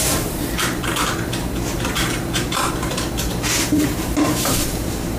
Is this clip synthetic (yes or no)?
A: yes